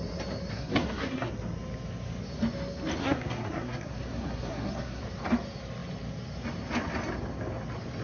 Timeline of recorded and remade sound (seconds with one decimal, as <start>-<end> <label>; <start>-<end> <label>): 0.0-0.5 recorded; 0.5-1.3 remade; 1.3-3.0 recorded; 3.0-5.0 remade; 5.0-8.0 recorded